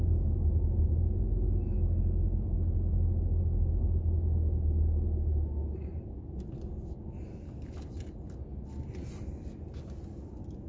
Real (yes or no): yes